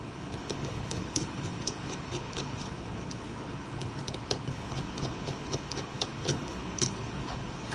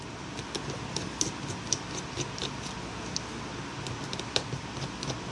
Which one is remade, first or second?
first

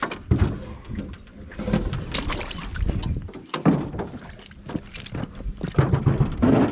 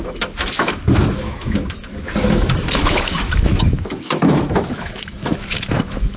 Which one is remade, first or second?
second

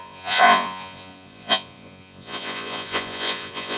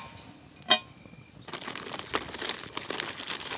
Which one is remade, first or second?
first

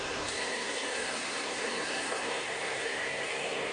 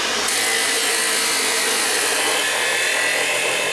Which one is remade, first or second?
first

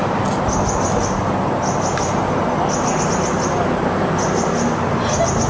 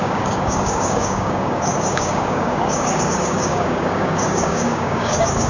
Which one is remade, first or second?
second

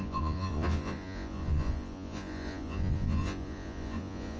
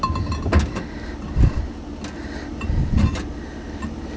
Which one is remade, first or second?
first